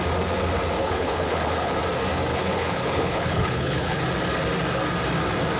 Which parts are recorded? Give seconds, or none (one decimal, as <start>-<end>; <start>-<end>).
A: 0.0-0.8; 1.8-2.3; 4.0-5.6